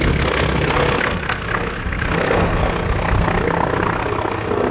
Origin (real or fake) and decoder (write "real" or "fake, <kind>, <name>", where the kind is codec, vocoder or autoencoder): fake, codec, SNAC